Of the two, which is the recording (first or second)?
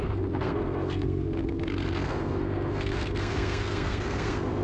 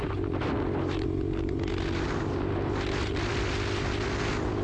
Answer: second